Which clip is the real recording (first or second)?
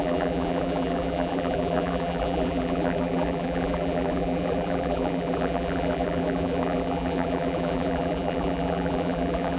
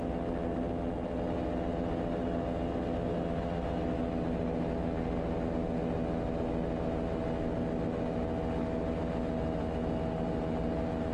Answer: second